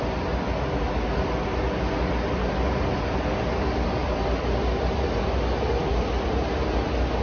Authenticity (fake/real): real